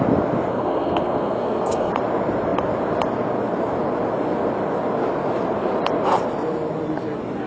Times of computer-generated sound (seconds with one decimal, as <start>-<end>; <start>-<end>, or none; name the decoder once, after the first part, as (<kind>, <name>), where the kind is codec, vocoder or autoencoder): 0.5-1.9 (codec, SNAC)